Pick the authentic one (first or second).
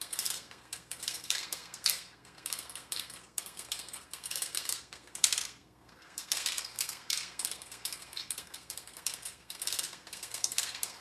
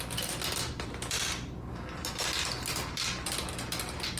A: second